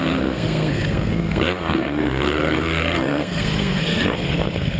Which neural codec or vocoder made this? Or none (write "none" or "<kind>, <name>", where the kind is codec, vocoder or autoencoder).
codec, SNAC